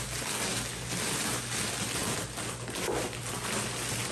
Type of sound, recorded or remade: recorded